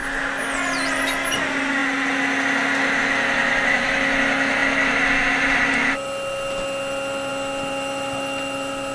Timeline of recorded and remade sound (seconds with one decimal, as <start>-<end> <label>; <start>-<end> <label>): 0.0-8.9 recorded